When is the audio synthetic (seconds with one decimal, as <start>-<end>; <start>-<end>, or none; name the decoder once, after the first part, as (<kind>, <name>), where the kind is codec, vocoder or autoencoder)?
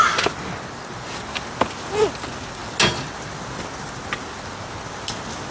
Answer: none